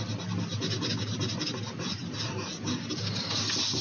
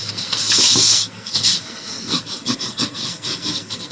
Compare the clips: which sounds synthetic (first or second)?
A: second